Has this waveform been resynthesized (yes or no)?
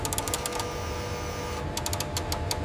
no